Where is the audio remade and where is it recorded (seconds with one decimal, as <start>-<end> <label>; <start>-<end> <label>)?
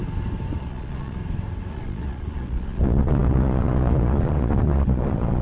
0.0-0.6 recorded; 0.6-1.2 remade; 1.2-1.7 recorded; 1.7-5.4 remade